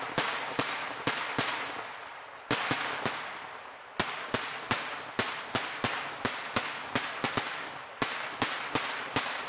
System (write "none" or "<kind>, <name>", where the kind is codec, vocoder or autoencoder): none